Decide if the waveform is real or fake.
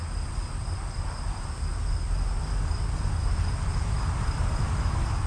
real